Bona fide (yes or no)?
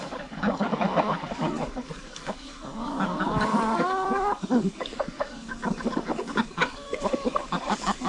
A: no